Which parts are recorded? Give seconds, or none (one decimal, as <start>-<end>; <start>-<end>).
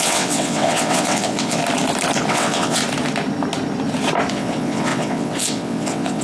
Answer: 1.6-2.3; 2.8-4.3